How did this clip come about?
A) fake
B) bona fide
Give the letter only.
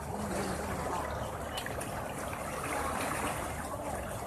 B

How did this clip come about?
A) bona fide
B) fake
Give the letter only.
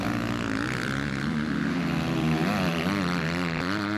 A